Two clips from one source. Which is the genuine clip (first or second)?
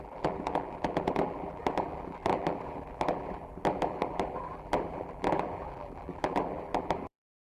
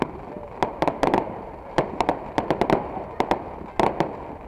second